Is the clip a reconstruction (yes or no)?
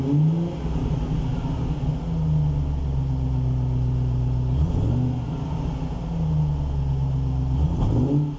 no